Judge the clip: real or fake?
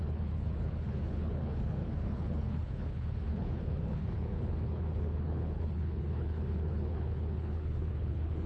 fake